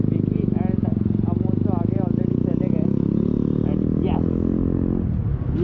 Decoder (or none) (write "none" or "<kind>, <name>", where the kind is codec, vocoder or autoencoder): none